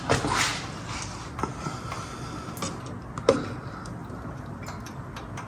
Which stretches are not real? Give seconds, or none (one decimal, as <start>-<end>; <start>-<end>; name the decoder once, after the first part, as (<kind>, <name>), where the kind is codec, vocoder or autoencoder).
4.0-5.0 (vocoder, BigVGAN v2)